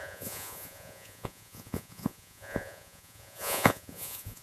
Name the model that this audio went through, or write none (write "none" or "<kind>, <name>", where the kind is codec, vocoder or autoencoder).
vocoder, Vocos